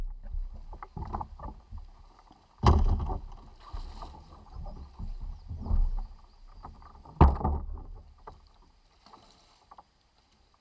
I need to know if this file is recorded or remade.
recorded